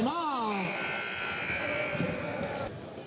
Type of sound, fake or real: real